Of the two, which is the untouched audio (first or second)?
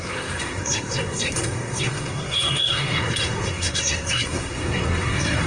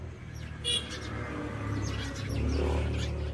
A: second